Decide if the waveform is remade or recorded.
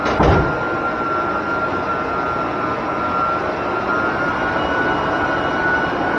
recorded